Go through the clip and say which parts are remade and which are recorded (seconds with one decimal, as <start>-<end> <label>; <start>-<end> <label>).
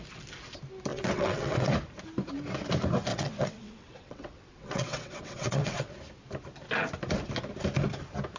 0.0-0.9 recorded; 0.9-1.7 remade; 1.7-3.1 recorded; 3.1-5.9 remade; 5.9-8.4 recorded